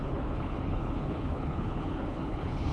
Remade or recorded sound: remade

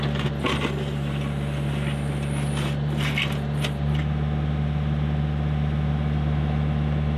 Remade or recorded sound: recorded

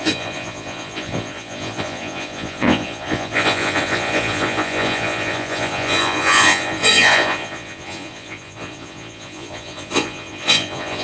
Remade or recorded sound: remade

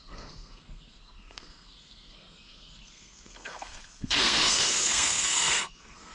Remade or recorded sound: remade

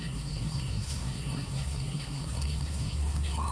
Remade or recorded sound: remade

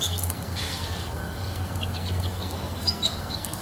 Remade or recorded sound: remade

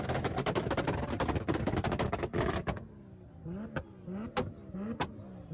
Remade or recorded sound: recorded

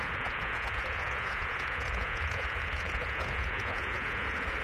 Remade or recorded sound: remade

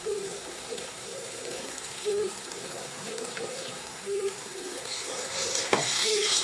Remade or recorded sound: remade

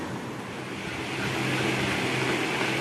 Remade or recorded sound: recorded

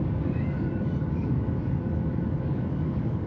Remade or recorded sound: remade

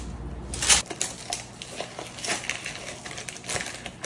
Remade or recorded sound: recorded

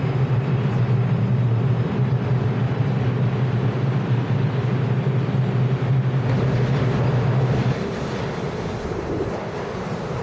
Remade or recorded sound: recorded